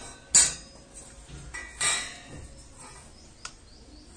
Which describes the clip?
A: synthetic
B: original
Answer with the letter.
B